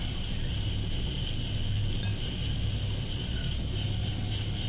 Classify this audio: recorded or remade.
recorded